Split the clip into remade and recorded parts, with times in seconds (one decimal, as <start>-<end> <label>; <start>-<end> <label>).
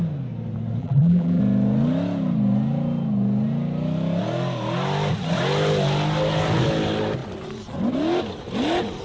0.0-0.8 recorded; 0.8-1.4 remade; 1.4-9.0 recorded